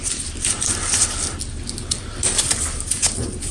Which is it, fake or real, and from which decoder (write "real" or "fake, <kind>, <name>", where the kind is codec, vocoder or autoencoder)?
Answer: real